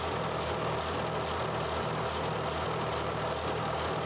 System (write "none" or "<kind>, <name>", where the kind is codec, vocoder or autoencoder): none